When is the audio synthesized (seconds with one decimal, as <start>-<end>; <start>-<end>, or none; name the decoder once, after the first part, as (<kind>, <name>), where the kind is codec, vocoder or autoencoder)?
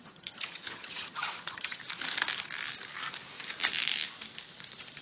0.0-1.8 (vocoder, HiFi-GAN)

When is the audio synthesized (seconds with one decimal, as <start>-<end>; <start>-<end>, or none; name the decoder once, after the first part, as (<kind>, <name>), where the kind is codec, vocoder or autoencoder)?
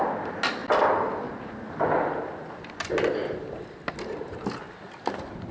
none